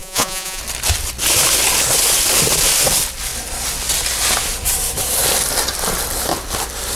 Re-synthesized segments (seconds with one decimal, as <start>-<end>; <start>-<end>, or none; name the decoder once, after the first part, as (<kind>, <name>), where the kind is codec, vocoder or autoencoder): 0.0-0.6 (vocoder, Vocos)